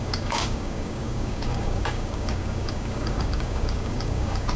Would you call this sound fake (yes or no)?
yes